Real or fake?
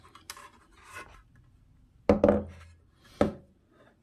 real